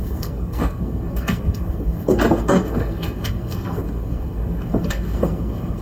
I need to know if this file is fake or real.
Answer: fake